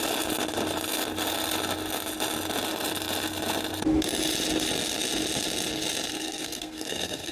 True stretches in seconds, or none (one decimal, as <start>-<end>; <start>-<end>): 0.0-6.1